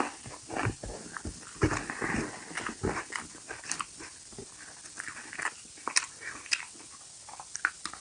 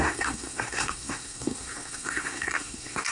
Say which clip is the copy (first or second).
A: second